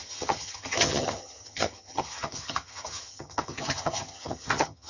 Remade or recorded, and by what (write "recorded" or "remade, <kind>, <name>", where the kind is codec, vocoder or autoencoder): remade, vocoder, HiFi-GAN